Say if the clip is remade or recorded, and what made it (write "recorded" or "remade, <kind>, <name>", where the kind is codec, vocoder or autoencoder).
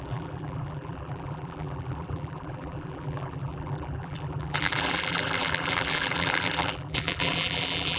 remade, vocoder, BigVGAN v2